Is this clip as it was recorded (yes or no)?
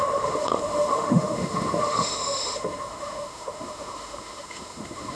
no